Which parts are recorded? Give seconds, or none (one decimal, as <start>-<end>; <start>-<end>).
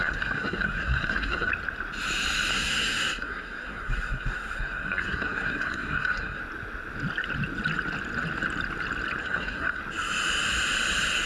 1.5-2.5; 6.4-9.2; 9.8-11.3